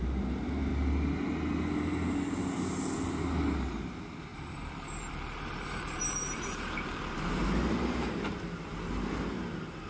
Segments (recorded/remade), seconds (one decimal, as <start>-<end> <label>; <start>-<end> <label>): 0.0-0.7 remade; 0.7-3.6 recorded; 3.6-9.9 remade